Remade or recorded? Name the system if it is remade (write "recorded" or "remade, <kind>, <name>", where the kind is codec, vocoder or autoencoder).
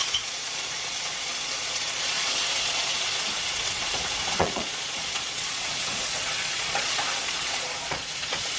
remade, vocoder, Vocos